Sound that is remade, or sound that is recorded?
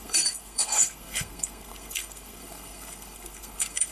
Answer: remade